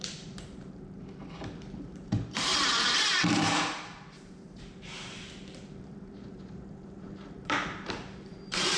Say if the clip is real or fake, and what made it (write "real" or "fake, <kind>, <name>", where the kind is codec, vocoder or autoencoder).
fake, vocoder, BigVGAN v2